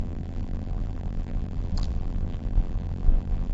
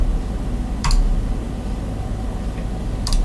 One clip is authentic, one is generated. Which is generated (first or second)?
first